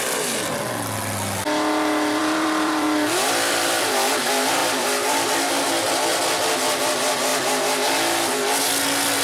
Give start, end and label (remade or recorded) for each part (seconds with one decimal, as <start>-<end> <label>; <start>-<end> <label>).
0.0-2.2 recorded; 2.2-4.1 remade; 4.1-4.6 recorded; 4.6-5.5 remade; 5.5-9.2 recorded